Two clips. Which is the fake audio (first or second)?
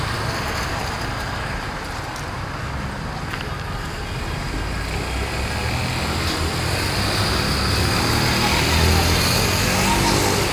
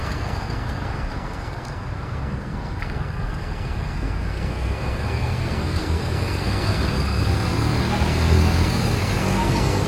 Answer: second